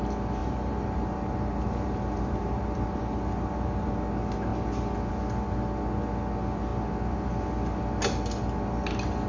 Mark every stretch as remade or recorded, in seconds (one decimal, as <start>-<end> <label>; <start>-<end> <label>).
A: 0.0-0.4 recorded; 0.4-3.9 remade; 3.9-9.3 recorded